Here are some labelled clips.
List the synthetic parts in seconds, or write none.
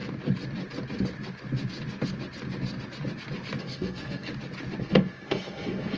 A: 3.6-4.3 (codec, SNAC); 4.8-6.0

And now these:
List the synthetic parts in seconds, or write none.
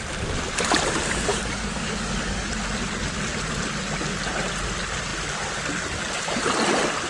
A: 1.3-2.5 (codec, DAC)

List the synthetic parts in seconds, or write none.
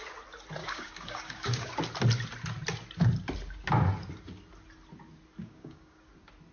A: 0.6-1.7 (codec, DAC); 5.4-6.1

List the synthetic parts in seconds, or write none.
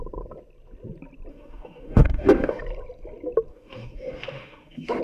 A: 1.3-2.6 (autoencoder, DAC-VAE); 3.5-5.0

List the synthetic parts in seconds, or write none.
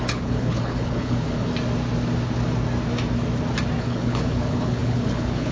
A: 0.0-1.5 (codec, HILCodec); 3.8-5.5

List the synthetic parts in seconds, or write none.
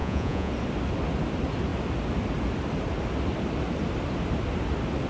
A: 0.0-0.5 (vocoder, Vocos)